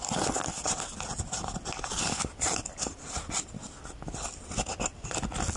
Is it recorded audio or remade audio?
recorded